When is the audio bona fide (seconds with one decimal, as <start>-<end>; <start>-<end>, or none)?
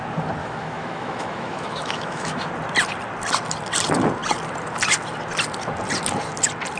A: 0.0-0.4; 2.5-6.8